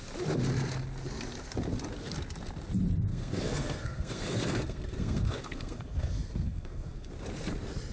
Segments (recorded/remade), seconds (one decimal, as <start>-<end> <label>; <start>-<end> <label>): 0.0-3.1 recorded; 3.1-7.1 remade; 7.1-7.9 recorded